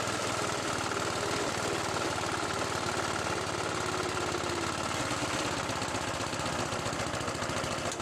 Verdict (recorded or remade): recorded